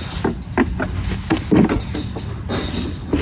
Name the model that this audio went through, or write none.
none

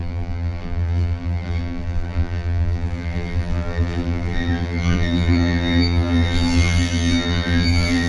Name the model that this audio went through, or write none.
vocoder, BigVGAN v2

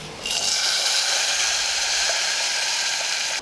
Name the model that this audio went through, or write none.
vocoder, BigVGAN v2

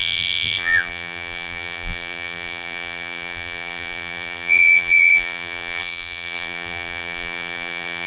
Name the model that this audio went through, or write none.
vocoder, BigVGAN v2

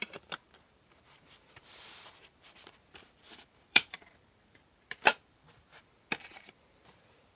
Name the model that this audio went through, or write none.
vocoder, BigVGAN v2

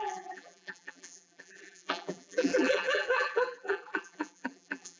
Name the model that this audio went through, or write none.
vocoder, BigVGAN v2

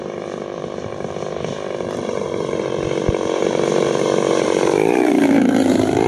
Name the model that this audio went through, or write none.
vocoder, BigVGAN v2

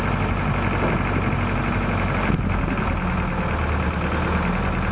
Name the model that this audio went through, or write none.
none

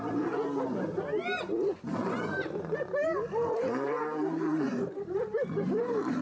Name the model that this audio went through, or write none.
vocoder, BigVGAN v2